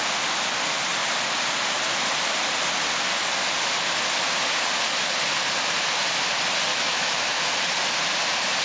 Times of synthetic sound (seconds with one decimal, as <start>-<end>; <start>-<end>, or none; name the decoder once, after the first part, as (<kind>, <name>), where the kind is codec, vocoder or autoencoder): 6.7-7.4 (autoencoder, DAC-VAE)